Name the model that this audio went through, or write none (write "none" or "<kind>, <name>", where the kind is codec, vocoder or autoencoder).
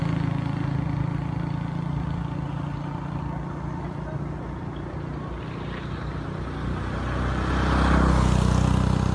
none